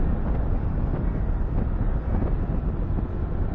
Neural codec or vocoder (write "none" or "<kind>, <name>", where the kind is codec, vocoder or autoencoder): none